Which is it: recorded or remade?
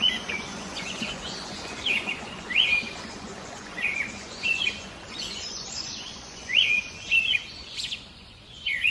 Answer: remade